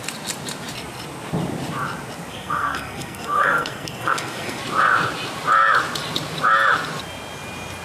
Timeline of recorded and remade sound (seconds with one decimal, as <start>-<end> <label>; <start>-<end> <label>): 0.0-2.3 recorded; 2.3-4.6 remade; 4.6-7.8 recorded